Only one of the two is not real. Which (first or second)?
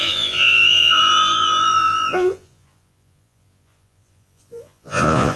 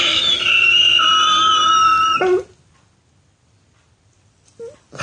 first